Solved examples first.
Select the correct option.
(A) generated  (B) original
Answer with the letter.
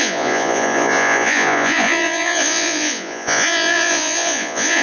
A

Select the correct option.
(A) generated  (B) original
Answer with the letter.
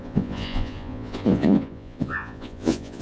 A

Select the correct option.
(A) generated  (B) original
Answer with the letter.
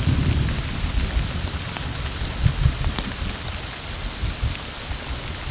B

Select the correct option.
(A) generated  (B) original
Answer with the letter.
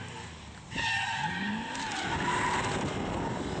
B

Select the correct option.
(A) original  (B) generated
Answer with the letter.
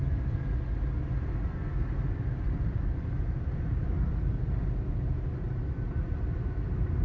A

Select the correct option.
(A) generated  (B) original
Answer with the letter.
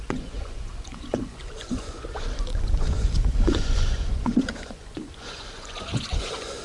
A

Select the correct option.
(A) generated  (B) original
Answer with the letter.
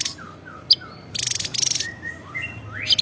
B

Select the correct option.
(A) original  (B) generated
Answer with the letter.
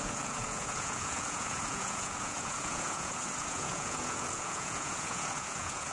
B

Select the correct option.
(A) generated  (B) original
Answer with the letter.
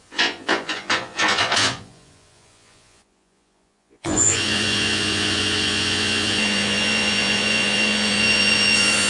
A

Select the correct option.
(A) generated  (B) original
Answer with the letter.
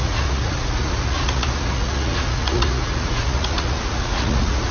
A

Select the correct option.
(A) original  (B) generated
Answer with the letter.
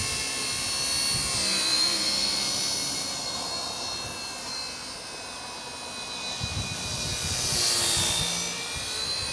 A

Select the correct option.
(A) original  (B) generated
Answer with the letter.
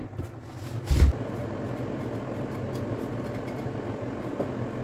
A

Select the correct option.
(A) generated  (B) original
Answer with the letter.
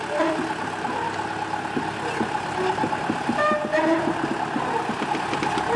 B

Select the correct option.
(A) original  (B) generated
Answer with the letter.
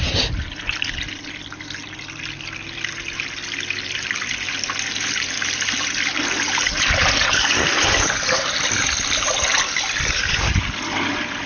A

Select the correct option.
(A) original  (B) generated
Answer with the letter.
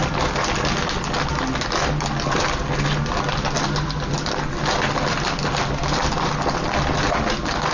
A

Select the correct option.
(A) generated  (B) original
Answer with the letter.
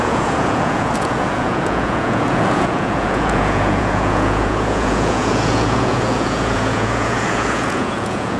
A